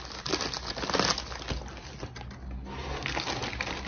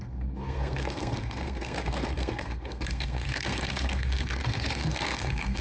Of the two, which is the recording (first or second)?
first